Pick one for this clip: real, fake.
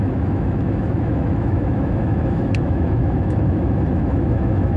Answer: fake